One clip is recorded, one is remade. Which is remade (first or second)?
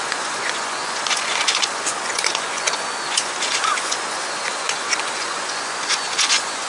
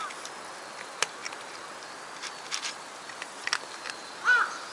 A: first